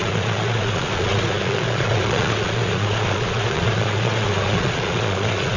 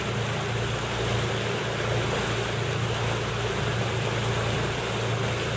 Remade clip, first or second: first